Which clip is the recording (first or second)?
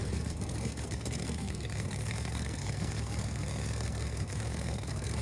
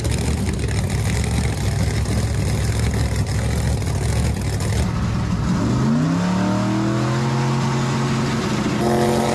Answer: second